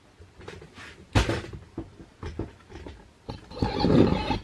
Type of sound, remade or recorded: recorded